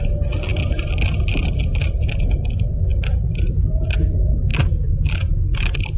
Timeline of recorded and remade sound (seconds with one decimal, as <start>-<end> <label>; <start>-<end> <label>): 0.0-6.0 recorded